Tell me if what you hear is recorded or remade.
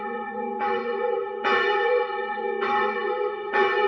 remade